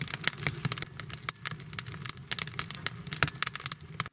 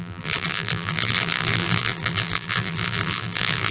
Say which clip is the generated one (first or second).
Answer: second